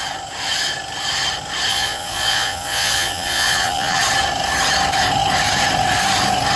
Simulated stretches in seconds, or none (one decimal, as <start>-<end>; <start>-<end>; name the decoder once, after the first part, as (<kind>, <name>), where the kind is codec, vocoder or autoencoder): 1.7-4.0 (vocoder, Vocos)